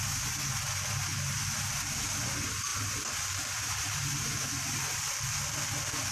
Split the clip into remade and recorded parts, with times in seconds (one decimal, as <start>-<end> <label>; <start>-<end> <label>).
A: 0.0-2.7 recorded; 2.7-5.1 remade; 5.1-6.1 recorded